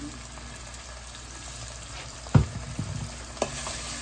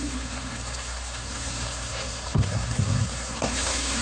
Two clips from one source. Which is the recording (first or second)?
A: first